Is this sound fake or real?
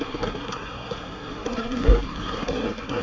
fake